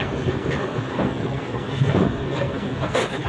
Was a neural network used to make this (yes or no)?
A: yes